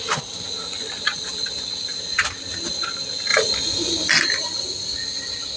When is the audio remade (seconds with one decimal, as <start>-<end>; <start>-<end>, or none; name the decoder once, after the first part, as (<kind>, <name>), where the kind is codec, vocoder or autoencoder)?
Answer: none